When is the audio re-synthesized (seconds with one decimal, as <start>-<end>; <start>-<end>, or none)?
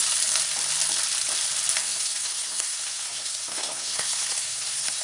1.8-5.0